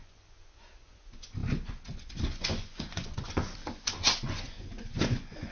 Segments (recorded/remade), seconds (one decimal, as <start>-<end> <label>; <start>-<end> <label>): 0.0-5.5 remade